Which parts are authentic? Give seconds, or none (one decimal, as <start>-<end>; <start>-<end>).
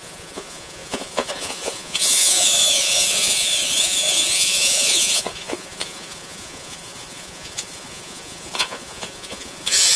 none